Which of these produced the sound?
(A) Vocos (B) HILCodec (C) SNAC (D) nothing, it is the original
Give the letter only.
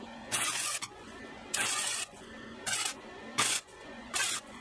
A